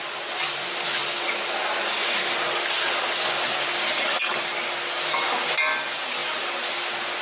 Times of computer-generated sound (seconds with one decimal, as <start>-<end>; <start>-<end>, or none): none